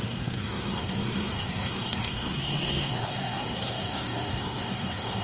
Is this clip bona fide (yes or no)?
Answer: no